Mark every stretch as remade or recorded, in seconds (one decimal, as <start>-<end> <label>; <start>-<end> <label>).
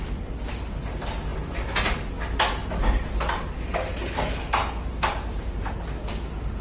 0.0-6.6 recorded